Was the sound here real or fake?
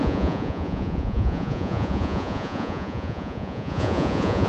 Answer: fake